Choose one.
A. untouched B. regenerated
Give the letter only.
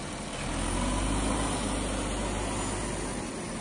A